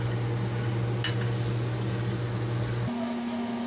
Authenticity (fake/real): real